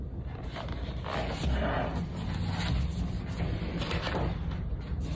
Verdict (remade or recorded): recorded